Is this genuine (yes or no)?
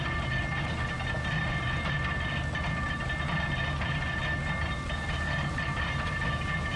yes